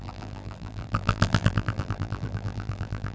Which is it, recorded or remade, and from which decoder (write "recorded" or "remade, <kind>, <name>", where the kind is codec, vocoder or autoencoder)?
remade, vocoder, BigVGAN v2